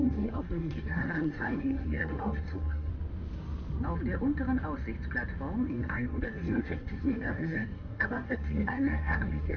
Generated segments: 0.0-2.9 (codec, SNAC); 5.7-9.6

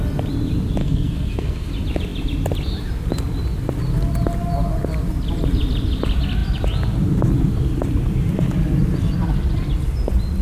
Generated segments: 0.8-1.7 (codec, SNAC)